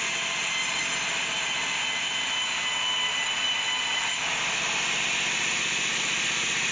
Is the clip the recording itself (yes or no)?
yes